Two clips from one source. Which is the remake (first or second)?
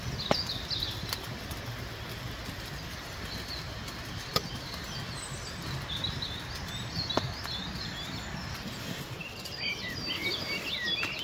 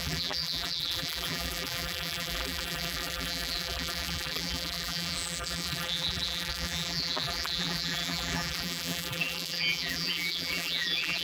second